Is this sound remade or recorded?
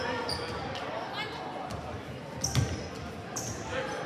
recorded